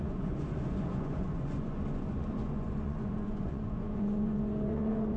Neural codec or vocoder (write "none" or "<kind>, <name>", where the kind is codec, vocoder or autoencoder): vocoder, Vocos